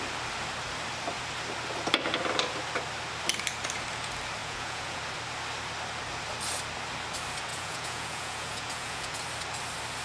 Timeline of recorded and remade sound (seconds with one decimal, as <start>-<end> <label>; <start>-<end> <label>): 0.0-4.4 recorded; 4.4-5.0 remade; 5.0-7.5 recorded; 7.5-9.2 remade; 9.2-10.0 recorded